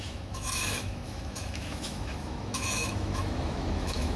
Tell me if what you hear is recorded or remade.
remade